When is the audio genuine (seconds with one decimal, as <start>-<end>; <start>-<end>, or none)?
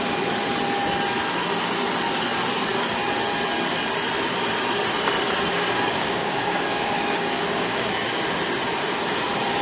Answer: 0.0-5.5; 7.9-9.6